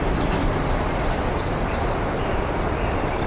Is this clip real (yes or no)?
yes